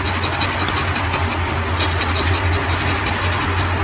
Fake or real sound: real